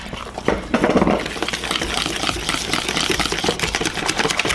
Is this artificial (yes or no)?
no